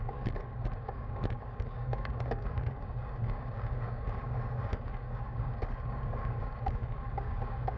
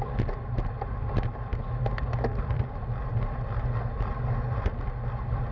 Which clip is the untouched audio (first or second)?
second